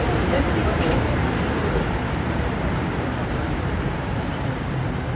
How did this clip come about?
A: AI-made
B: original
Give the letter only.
A